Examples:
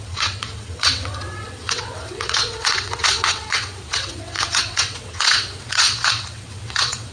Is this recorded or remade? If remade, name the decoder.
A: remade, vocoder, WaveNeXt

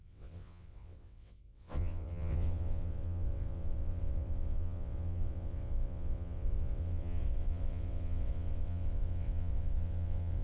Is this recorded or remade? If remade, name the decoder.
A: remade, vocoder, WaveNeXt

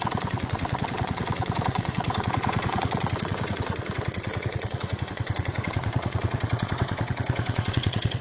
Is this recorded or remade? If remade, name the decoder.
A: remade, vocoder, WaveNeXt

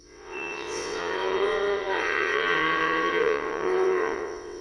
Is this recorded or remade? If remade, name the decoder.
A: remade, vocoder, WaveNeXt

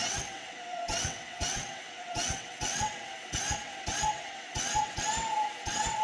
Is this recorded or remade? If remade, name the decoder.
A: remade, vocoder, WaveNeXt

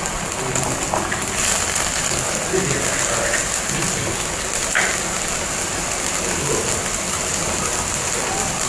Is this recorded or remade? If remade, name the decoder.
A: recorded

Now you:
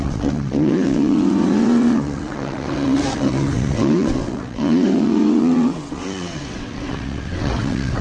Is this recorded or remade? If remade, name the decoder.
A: remade, vocoder, WaveNeXt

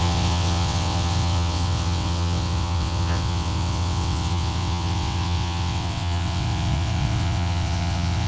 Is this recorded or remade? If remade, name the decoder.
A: remade, vocoder, WaveNeXt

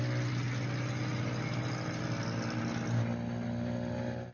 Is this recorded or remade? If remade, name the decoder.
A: recorded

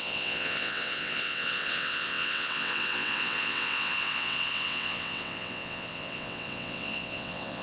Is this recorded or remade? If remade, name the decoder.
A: remade, vocoder, WaveNeXt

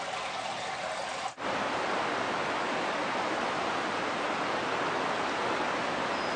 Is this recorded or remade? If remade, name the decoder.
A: recorded